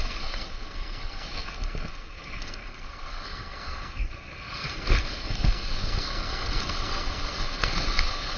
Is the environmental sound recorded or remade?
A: remade